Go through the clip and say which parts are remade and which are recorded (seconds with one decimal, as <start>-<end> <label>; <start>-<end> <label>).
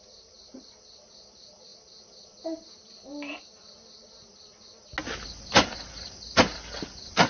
0.0-7.3 recorded